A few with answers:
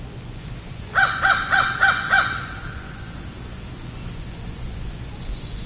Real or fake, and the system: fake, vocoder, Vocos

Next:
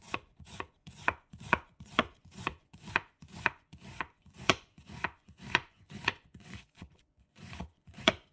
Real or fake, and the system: fake, vocoder, Vocos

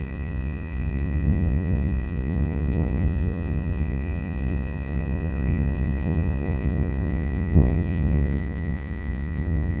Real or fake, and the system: fake, vocoder, Vocos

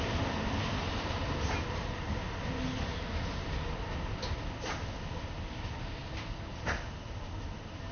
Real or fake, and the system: real